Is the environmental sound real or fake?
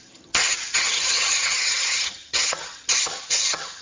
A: fake